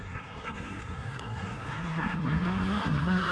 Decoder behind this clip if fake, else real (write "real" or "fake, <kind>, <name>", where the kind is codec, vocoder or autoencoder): fake, codec, SNAC